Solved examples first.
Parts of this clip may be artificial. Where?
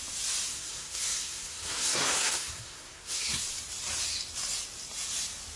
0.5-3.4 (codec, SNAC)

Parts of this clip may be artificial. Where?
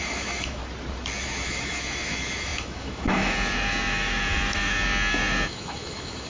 0.0-0.6 (autoencoder, DAC-VAE); 1.2-6.3